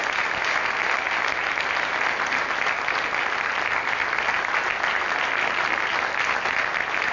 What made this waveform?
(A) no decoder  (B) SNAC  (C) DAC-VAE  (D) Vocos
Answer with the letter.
A